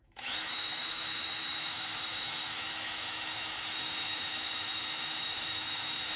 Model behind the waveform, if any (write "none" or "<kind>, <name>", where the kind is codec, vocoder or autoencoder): autoencoder, DAC-VAE